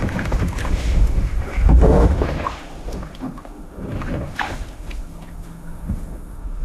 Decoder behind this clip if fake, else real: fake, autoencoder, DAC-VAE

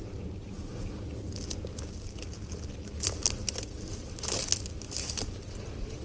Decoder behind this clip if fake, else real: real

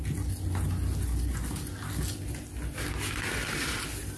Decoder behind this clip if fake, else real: real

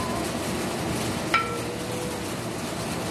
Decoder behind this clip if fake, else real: real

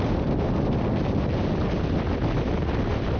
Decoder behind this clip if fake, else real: real